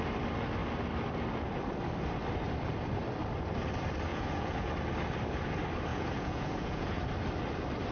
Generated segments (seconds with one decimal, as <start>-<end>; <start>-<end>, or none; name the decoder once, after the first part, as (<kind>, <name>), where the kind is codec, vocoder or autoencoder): 4.1-4.7 (vocoder, Vocos); 5.9-7.0